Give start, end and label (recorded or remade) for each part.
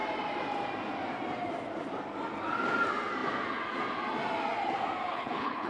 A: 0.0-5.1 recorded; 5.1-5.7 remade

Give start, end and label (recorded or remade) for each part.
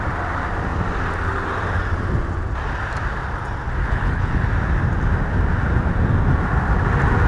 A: 0.0-3.8 recorded; 3.8-4.3 remade; 4.3-7.3 recorded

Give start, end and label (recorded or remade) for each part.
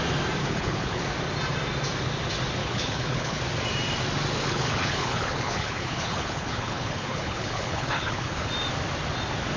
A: 0.0-0.4 recorded; 0.4-1.0 remade; 1.0-2.6 recorded; 2.6-3.4 remade; 3.4-4.4 recorded; 4.4-8.5 remade; 8.5-9.6 recorded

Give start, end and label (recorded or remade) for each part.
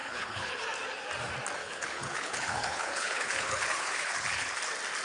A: 0.0-0.5 remade; 0.5-1.6 recorded; 1.6-4.6 remade; 4.6-5.0 recorded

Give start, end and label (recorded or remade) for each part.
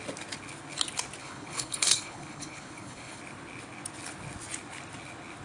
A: 0.0-1.2 recorded; 1.2-3.2 remade; 3.2-5.4 recorded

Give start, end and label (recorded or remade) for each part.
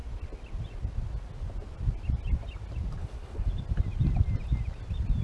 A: 0.0-3.0 recorded; 3.0-3.5 remade; 3.5-5.2 recorded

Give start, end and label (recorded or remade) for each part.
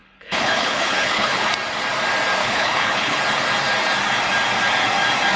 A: 0.0-1.5 remade; 1.5-2.4 recorded; 2.4-3.2 remade; 3.2-5.4 recorded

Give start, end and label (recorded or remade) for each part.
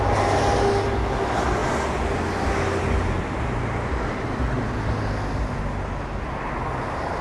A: 0.0-7.2 recorded